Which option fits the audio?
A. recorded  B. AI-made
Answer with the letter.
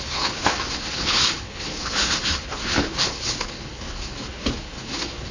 B